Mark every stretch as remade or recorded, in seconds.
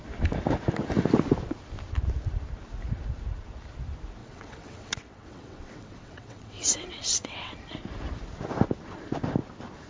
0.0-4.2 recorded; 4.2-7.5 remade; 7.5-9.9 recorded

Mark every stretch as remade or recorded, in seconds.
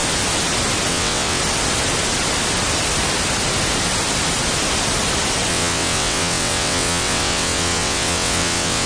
0.0-0.9 recorded; 0.9-1.4 remade; 1.4-5.5 recorded; 5.5-8.9 remade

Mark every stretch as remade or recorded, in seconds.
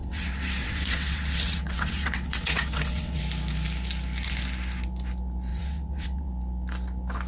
0.0-3.2 remade; 3.2-5.5 recorded; 5.5-6.3 remade; 6.3-7.3 recorded